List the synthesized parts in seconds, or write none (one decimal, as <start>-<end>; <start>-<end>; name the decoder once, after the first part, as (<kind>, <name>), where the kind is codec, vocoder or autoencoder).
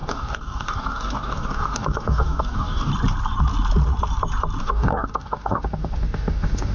0.0-2.9 (codec, DAC); 4.6-6.7